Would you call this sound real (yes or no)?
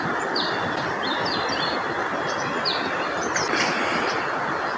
yes